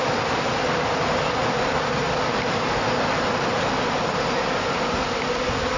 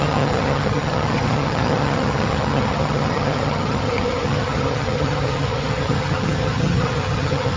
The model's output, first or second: second